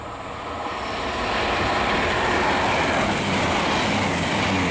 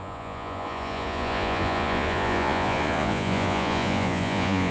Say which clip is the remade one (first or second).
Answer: second